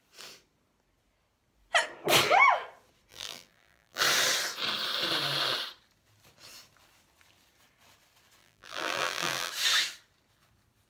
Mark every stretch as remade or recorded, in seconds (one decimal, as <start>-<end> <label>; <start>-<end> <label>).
0.0-3.1 recorded; 3.1-4.0 remade; 4.0-8.4 recorded; 8.4-9.5 remade; 9.5-10.9 recorded